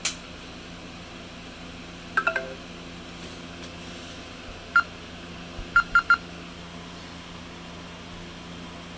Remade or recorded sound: recorded